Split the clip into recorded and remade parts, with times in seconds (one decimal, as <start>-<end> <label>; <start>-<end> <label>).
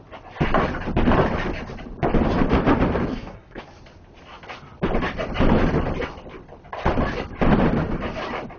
0.0-3.1 recorded; 3.1-3.6 remade; 3.6-8.6 recorded